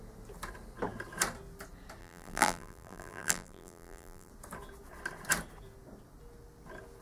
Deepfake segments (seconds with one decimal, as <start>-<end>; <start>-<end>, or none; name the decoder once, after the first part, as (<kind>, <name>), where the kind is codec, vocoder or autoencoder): 2.0-4.3 (vocoder, BigVGAN v2)